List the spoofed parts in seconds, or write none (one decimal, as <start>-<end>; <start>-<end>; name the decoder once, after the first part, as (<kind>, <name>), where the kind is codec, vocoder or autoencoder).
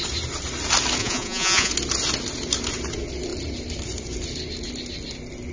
1.0-1.7 (vocoder, Vocos)